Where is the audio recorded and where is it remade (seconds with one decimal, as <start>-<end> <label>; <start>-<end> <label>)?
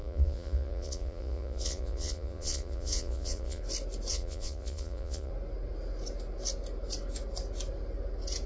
0.0-3.6 remade; 3.6-4.1 recorded; 4.1-5.3 remade; 5.3-8.5 recorded